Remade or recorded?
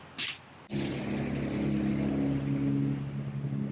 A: recorded